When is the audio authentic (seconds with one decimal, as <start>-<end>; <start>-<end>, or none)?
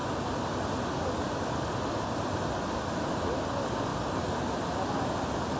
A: 0.0-5.6